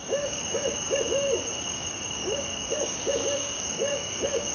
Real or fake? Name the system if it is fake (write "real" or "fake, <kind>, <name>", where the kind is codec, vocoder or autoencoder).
fake, codec, DAC